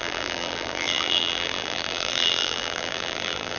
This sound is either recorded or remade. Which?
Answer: remade